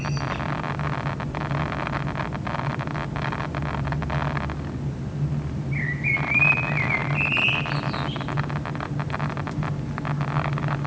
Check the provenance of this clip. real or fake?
real